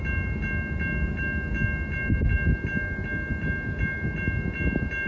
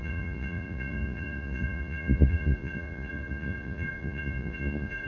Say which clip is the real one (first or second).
first